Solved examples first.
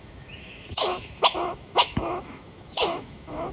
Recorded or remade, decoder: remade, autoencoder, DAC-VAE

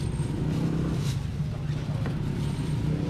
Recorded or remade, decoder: recorded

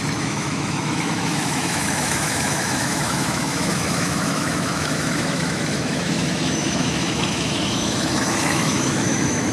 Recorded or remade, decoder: remade, autoencoder, DAC-VAE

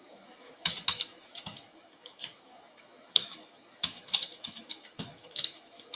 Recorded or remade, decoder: remade, autoencoder, DAC-VAE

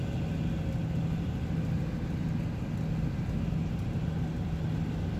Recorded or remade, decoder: recorded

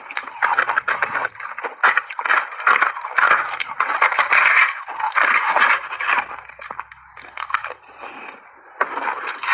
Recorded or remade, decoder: recorded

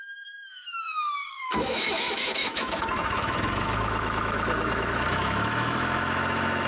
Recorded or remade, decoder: remade, autoencoder, DAC-VAE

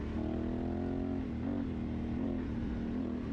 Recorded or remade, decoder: recorded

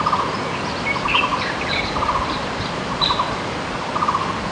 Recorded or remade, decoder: recorded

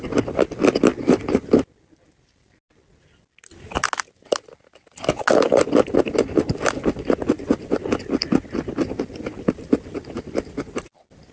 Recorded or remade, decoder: recorded